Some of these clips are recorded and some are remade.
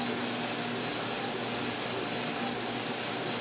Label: recorded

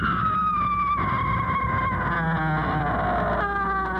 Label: recorded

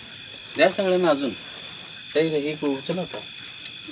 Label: recorded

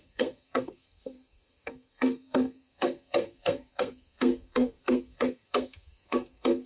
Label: remade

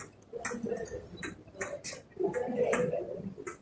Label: recorded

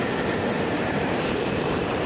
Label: remade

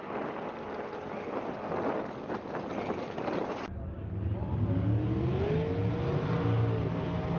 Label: recorded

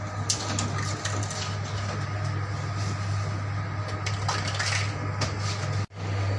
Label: recorded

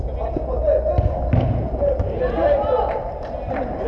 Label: recorded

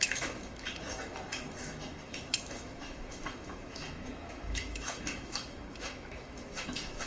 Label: remade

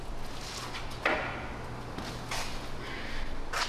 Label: recorded